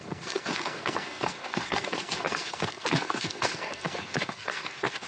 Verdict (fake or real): fake